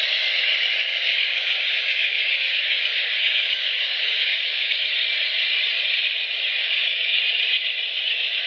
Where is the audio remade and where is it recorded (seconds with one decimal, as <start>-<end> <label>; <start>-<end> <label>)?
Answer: 0.0-0.9 recorded; 0.9-4.7 remade; 4.7-6.6 recorded; 6.6-7.2 remade; 7.2-8.5 recorded